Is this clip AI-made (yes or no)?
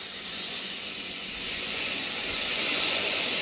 yes